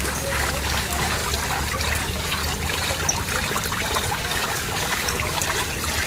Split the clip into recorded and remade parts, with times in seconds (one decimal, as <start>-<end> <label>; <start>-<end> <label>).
0.0-1.2 remade; 1.2-2.0 recorded; 2.0-2.4 remade; 2.4-4.1 recorded; 4.1-5.4 remade; 5.4-6.1 recorded